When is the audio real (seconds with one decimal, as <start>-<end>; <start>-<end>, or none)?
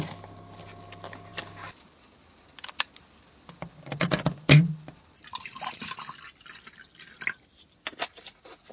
0.0-8.7